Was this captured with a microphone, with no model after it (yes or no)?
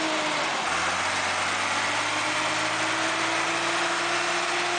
yes